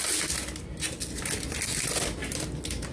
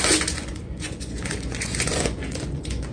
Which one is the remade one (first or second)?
second